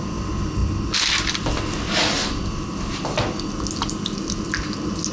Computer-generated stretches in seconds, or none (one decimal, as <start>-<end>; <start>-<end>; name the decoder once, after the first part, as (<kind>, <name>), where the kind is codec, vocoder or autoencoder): none